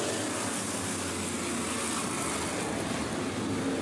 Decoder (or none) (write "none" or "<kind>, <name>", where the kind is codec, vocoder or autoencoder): none